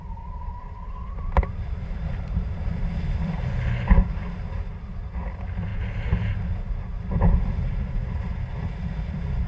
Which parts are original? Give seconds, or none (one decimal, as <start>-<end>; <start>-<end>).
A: 5.7-7.1